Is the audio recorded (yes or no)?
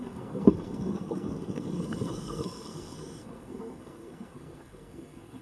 no